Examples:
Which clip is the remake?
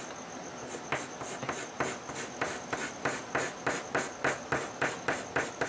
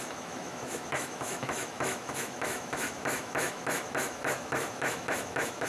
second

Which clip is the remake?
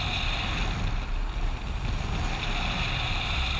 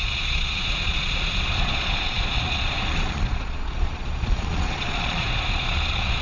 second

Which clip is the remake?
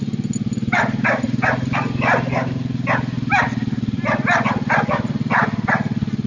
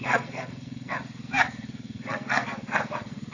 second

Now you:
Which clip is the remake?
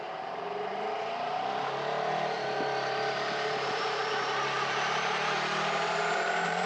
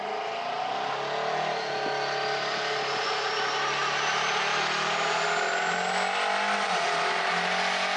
first